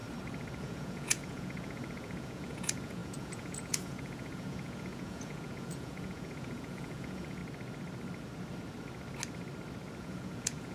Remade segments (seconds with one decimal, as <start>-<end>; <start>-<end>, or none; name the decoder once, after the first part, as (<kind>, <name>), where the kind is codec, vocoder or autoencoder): 0.6-7.4 (vocoder, Vocos); 10.0-10.7